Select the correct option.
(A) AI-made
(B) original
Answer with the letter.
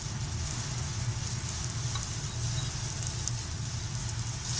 B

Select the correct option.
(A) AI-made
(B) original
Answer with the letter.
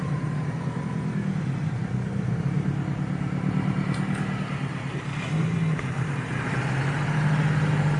B